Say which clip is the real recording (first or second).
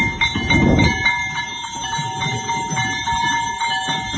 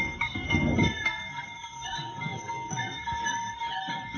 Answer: first